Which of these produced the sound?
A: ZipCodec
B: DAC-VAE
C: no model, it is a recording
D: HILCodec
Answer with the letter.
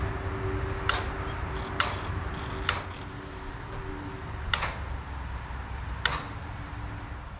C